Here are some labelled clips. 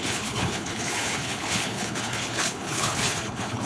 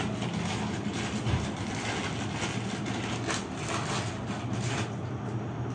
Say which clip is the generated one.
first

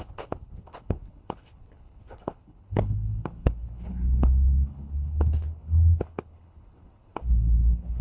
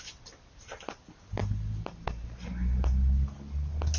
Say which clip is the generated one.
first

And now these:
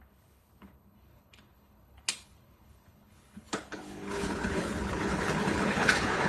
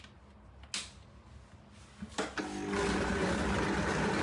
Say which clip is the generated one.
first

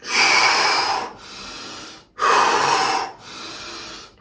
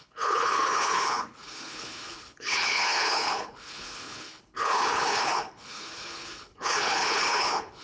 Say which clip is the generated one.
second